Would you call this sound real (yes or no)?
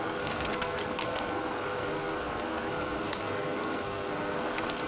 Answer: no